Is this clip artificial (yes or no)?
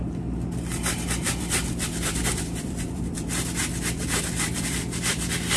yes